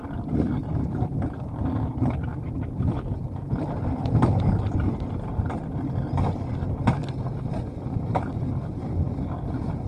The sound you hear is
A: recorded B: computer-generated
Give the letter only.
A